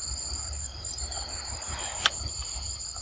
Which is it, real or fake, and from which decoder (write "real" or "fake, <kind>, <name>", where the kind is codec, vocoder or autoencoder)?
fake, vocoder, BigVGAN v2